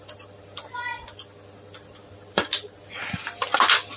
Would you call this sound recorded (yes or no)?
no